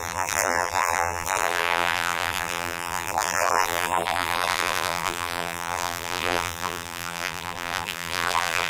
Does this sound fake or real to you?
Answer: fake